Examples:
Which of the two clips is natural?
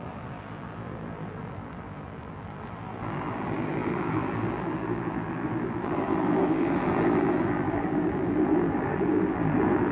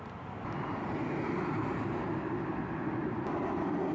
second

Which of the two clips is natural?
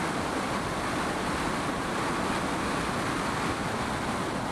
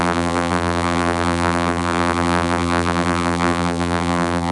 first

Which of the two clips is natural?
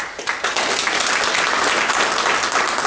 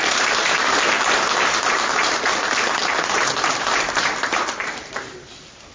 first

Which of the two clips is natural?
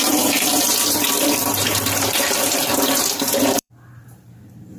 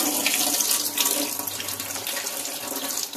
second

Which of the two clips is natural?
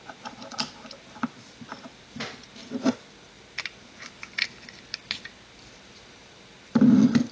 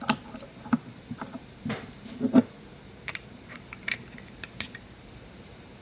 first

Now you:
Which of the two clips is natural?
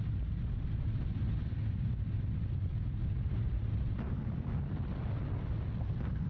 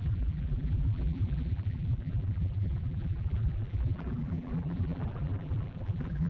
first